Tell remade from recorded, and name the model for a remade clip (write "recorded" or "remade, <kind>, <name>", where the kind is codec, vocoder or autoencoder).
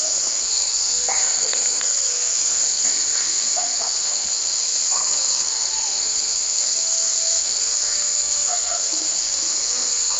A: remade, codec, SNAC